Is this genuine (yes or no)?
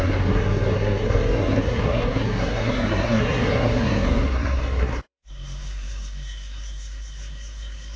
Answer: no